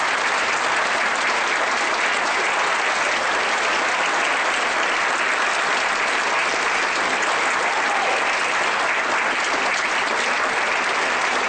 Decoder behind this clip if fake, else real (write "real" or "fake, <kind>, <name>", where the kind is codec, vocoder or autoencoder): real